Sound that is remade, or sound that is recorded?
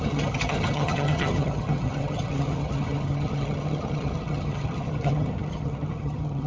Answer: remade